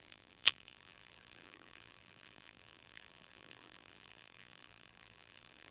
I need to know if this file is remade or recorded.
remade